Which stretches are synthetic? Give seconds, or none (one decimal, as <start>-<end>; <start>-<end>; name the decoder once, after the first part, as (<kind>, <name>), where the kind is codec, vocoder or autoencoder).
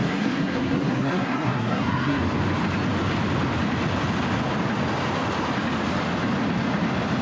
0.0-2.2 (codec, SNAC)